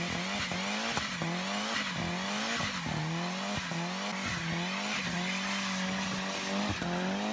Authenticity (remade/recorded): recorded